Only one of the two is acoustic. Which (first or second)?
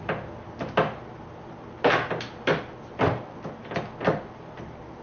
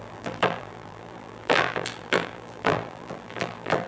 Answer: first